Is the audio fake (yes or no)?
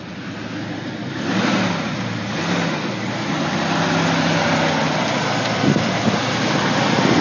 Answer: no